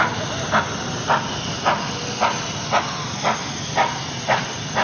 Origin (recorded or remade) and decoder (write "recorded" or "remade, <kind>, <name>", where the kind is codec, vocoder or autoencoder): recorded